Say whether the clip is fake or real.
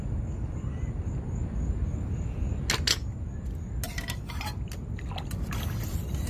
real